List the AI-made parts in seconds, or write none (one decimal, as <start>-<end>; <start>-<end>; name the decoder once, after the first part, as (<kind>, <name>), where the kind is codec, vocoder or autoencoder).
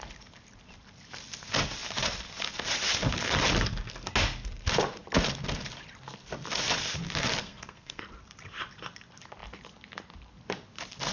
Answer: 7.4-8.0 (codec, SNAC)